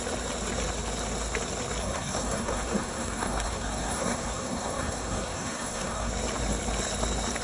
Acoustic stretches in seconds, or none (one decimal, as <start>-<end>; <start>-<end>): 0.0-1.8; 6.1-7.4